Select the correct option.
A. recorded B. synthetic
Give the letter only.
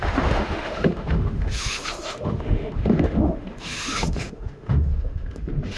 B